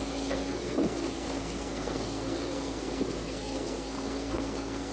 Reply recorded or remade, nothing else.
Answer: remade